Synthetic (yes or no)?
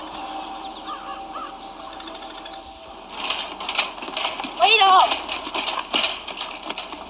no